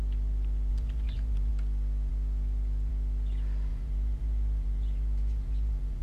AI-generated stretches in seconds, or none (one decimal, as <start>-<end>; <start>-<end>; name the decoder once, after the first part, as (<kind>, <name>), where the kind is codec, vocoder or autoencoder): 0.7-1.5 (vocoder, BigVGAN v2); 3.7-6.0